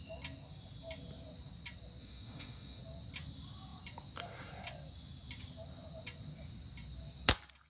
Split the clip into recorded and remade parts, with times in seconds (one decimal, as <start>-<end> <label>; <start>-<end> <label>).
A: 0.0-2.0 recorded; 2.0-2.8 remade; 2.8-7.7 recorded